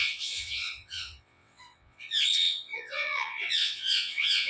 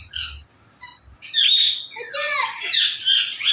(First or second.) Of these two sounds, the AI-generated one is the first